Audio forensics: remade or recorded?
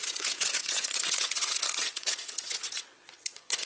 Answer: remade